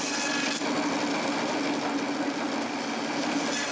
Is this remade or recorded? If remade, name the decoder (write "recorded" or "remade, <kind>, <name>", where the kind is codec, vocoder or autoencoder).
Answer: recorded